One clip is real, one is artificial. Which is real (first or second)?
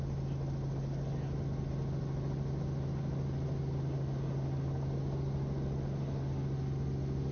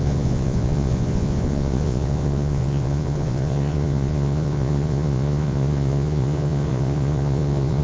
first